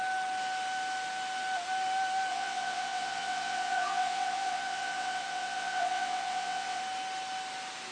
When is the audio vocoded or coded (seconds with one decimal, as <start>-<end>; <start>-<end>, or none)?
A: 2.3-6.8

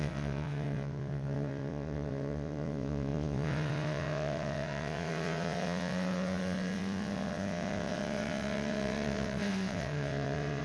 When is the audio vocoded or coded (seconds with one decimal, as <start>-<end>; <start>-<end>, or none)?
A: 0.0-10.6

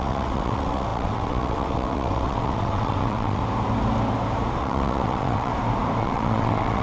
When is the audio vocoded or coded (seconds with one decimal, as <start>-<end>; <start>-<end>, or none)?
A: 0.0-3.4; 4.6-5.5; 6.0-6.8

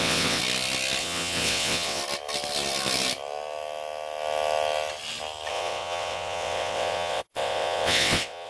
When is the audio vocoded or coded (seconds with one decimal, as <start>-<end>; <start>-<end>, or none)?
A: 0.0-0.4; 1.0-2.0; 5.5-8.5

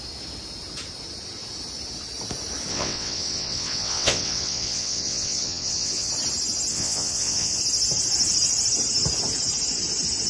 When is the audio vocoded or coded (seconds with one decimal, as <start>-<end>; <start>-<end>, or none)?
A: 2.7-6.1; 6.7-7.6

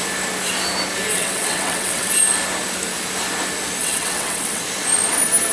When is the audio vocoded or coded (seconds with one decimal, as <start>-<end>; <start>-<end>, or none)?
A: 1.1-2.1; 3.8-4.6

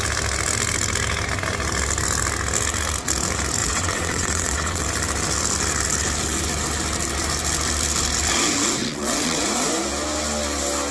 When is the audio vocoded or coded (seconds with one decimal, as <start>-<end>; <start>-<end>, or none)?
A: 3.6-4.8; 8.8-9.4